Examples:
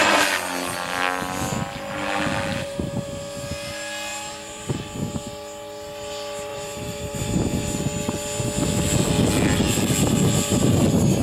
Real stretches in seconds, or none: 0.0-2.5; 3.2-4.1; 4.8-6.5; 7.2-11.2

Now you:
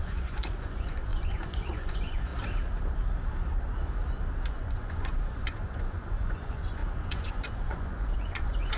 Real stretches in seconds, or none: 2.3-4.5

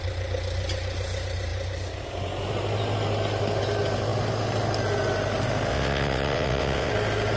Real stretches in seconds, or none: 0.0-5.7; 6.9-7.4

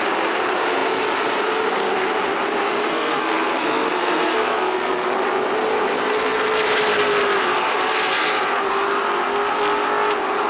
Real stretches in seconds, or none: 0.0-2.9; 5.1-10.5